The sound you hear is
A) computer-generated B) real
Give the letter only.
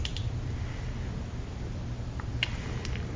B